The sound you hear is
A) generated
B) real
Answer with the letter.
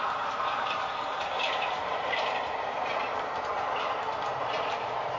A